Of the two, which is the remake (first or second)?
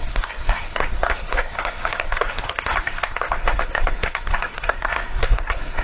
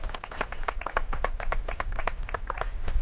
first